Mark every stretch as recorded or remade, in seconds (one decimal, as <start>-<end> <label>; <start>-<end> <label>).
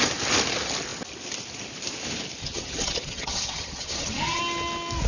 0.0-2.4 recorded; 2.4-4.4 remade; 4.4-5.1 recorded